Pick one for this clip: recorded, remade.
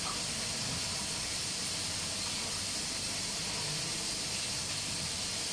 remade